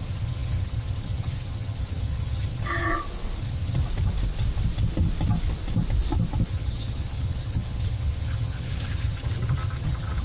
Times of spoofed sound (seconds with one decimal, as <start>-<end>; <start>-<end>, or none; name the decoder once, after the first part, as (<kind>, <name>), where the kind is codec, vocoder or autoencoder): 0.0-2.9 (vocoder, HiFi-GAN); 3.4-3.8; 6.5-10.2